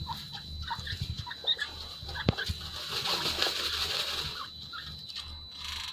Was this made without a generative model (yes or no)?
yes